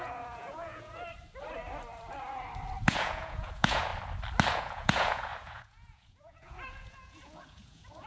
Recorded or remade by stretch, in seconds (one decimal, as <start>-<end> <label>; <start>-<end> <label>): 0.0-0.9 remade; 0.9-2.8 recorded; 2.8-3.9 remade; 3.9-4.5 recorded; 4.5-8.1 remade